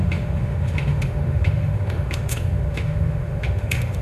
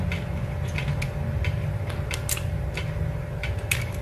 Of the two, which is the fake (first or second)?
first